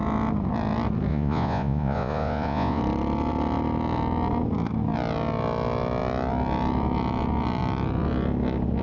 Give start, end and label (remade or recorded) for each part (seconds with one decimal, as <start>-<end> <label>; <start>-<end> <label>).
0.0-1.1 recorded; 1.1-2.8 remade; 2.8-8.8 recorded